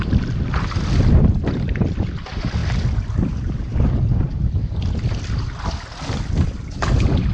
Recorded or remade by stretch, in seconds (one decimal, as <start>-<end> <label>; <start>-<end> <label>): 0.0-7.3 recorded